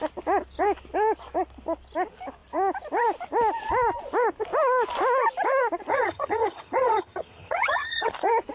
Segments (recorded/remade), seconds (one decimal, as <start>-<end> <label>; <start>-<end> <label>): 0.0-5.9 recorded; 5.9-8.1 remade; 8.1-8.5 recorded